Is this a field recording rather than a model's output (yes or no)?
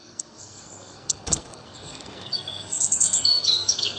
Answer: no